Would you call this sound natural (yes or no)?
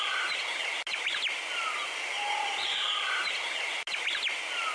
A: yes